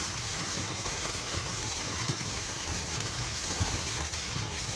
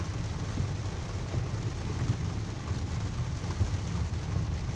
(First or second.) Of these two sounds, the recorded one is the second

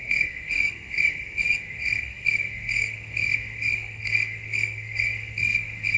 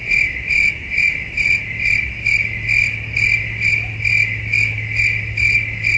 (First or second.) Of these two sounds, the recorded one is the second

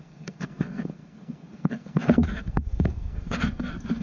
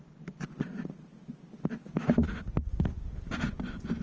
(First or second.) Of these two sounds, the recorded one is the second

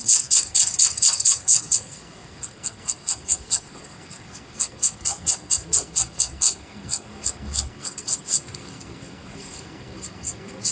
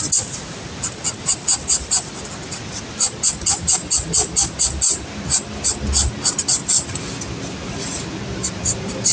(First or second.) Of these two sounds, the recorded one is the second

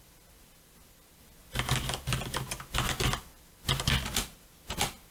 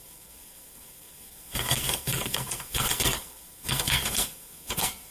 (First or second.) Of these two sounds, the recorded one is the first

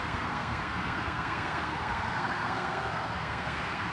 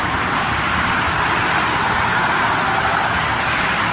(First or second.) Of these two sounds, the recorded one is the second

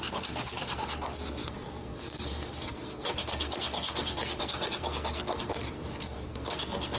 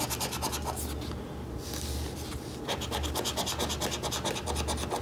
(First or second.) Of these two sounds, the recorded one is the second